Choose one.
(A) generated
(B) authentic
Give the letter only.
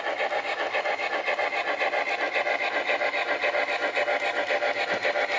B